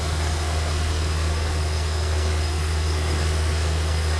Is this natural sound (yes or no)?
no